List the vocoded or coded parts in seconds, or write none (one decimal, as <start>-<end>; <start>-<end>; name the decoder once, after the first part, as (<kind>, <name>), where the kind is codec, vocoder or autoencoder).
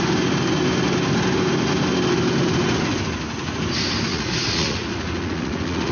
4.1-5.9 (vocoder, Vocos)